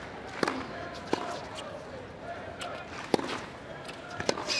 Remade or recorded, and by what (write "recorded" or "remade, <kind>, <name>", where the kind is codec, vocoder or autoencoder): recorded